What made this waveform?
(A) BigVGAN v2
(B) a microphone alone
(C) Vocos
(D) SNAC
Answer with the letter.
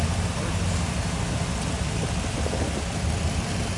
B